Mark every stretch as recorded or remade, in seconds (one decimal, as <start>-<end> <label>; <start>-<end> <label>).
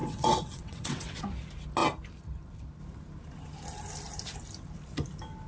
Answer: 0.0-1.2 remade; 1.2-5.5 recorded